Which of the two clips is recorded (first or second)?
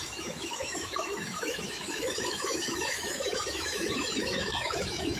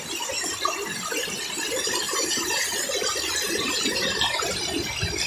second